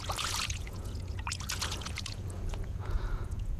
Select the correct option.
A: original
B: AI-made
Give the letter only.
B